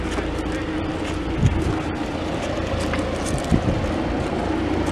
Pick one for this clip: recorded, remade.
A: recorded